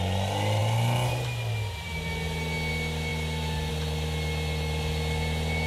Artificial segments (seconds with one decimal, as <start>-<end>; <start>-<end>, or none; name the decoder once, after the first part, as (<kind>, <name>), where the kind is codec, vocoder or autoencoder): none